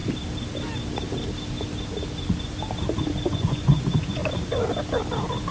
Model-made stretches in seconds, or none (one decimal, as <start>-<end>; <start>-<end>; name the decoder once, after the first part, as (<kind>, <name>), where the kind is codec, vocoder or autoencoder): 3.3-4.2 (vocoder, Vocos)